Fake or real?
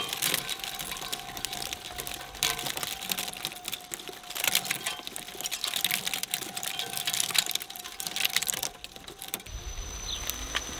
real